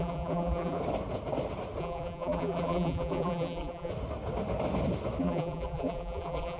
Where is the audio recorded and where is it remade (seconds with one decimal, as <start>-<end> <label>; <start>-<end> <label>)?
0.0-0.8 remade; 0.8-1.8 recorded; 1.8-3.9 remade; 3.9-5.2 recorded; 5.2-6.6 remade

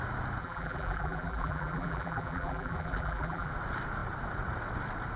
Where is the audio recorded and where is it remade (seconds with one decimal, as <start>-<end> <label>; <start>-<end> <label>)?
0.0-0.4 recorded; 0.4-3.5 remade; 3.5-5.2 recorded